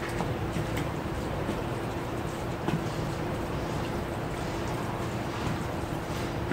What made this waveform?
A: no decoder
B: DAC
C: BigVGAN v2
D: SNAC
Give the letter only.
C